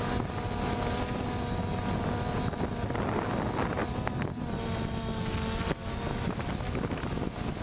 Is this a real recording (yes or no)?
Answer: yes